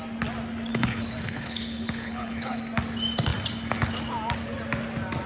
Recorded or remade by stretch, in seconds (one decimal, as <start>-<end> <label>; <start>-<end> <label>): 0.0-0.7 recorded; 0.7-2.6 remade; 2.6-5.3 recorded